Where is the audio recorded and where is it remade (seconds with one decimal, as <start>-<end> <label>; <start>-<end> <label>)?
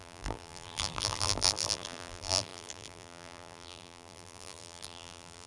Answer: 0.0-5.5 remade